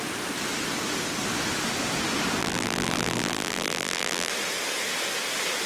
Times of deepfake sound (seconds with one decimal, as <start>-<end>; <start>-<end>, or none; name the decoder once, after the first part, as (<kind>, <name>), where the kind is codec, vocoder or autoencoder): 2.4-4.3 (vocoder, BigVGAN v2)